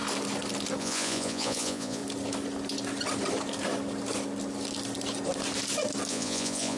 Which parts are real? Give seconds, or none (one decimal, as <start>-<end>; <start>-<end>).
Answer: 0.0-0.8; 2.0-6.1